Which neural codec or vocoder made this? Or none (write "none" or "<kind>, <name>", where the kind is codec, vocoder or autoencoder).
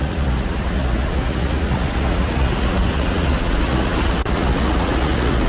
vocoder, Vocos